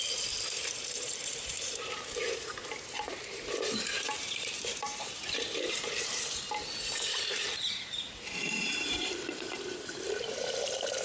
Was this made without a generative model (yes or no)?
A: no